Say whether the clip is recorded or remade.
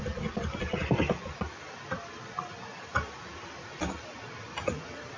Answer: recorded